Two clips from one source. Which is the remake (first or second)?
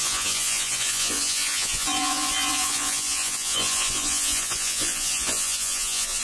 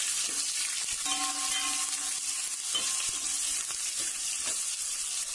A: first